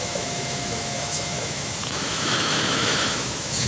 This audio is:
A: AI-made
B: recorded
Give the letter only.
A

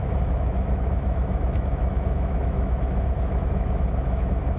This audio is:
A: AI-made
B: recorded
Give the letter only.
A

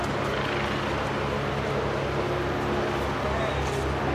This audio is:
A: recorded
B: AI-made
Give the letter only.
A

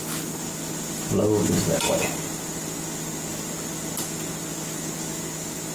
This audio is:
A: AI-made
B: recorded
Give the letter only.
B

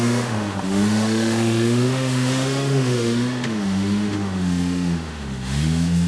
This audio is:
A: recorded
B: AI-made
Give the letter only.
B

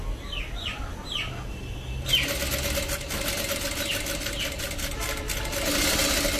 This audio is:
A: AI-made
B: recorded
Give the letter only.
B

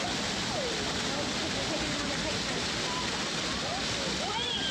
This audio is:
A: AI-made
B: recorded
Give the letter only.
B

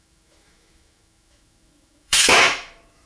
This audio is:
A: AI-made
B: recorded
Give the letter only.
A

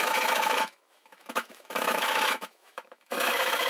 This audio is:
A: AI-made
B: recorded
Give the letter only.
A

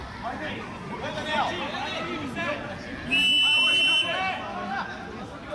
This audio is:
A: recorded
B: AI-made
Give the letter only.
A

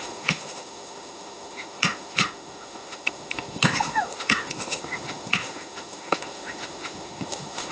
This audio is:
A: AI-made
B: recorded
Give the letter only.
A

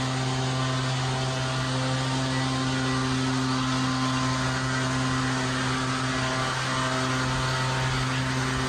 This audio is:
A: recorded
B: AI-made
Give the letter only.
A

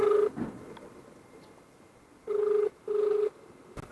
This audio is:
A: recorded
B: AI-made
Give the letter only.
A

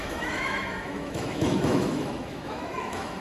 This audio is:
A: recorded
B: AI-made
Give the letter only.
B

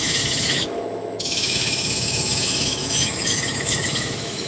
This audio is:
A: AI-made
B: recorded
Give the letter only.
A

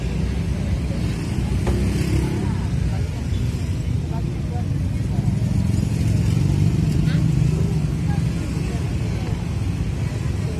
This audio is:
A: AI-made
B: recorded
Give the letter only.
B